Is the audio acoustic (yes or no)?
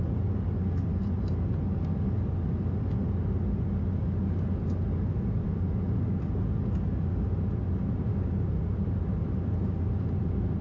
yes